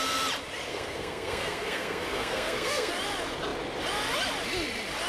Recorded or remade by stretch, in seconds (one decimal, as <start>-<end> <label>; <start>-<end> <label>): 0.0-0.7 recorded; 0.7-2.9 remade; 2.9-5.1 recorded